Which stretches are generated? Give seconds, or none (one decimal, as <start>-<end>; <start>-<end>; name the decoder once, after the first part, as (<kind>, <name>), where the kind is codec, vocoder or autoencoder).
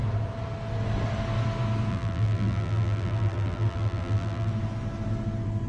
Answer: 1.9-4.5 (vocoder, BigVGAN v2)